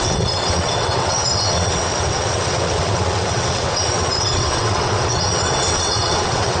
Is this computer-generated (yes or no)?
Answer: yes